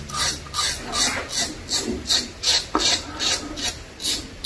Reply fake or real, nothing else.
real